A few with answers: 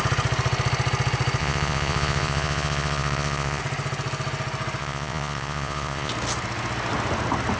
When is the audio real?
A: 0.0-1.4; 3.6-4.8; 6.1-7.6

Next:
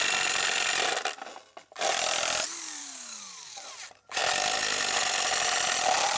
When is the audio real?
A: 0.0-2.8; 3.7-6.2

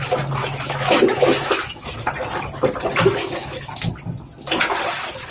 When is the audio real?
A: 0.0-0.4; 1.9-3.2; 3.9-5.3

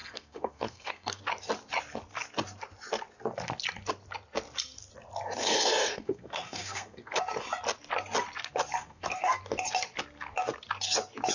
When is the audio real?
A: 1.2-5.4; 7.2-8.8; 9.4-11.3

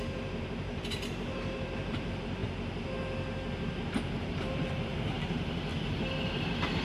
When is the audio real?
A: 2.4-4.3